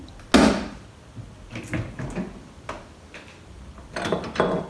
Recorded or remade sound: recorded